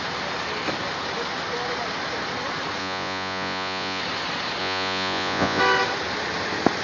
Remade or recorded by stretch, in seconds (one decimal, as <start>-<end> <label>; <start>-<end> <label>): 0.0-2.8 recorded; 2.8-4.0 remade; 4.0-4.6 recorded; 4.6-5.6 remade; 5.6-6.8 recorded